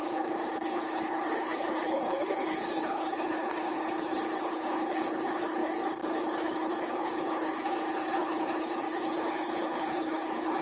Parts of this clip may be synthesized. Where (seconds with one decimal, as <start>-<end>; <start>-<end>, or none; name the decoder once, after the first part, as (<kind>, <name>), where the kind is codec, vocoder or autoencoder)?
0.0-10.6 (codec, HILCodec)